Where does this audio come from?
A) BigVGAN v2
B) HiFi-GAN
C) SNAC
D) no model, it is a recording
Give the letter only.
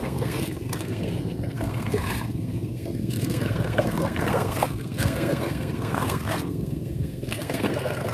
C